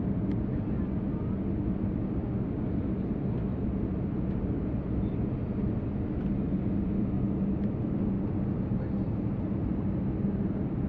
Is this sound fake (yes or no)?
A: no